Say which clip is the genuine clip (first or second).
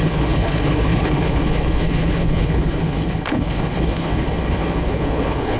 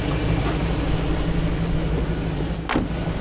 second